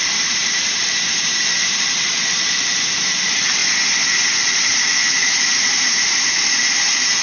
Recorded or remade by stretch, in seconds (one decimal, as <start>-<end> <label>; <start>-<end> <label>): 0.0-3.6 remade; 3.6-4.5 recorded; 4.5-7.2 remade